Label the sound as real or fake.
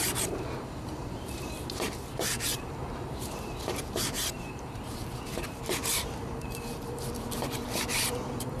fake